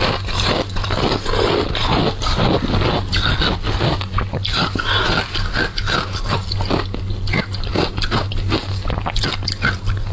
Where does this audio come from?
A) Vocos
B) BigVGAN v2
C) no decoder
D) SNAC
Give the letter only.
C